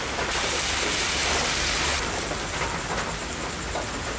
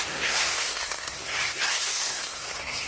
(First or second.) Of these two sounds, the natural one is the first